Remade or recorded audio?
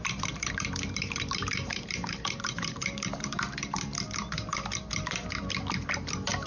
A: remade